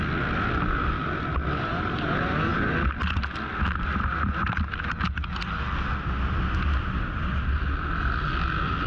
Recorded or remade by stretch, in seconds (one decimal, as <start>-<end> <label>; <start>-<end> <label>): 0.0-8.9 recorded